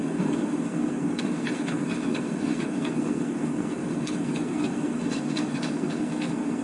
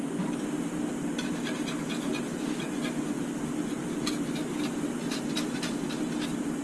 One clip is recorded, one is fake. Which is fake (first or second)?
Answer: first